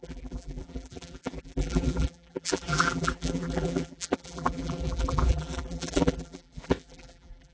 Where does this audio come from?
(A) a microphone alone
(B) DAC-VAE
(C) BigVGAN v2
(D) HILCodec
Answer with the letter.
C